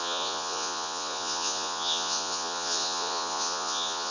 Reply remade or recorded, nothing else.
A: remade